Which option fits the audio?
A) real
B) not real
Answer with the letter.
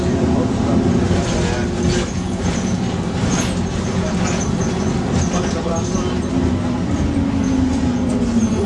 A